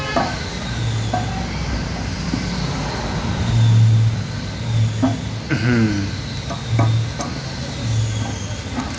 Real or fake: real